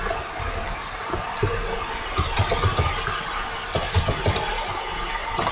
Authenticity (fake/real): real